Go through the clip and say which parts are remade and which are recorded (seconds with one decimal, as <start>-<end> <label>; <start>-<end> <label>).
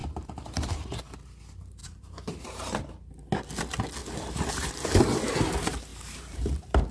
0.0-0.9 remade; 0.9-1.8 recorded; 1.8-2.8 remade; 2.8-4.0 recorded; 4.0-4.7 remade; 4.7-5.9 recorded; 5.9-6.4 remade; 6.4-6.9 recorded